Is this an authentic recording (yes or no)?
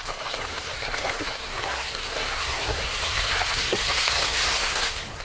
no